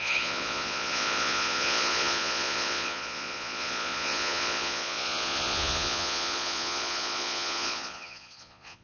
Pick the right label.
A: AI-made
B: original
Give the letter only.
A